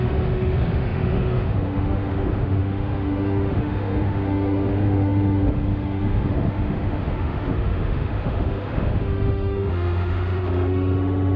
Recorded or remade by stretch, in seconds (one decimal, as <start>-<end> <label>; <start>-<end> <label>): 0.0-11.4 remade